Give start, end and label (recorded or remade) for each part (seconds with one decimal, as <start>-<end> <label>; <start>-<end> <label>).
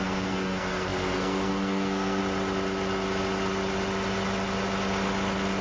0.0-2.2 remade; 2.2-5.6 recorded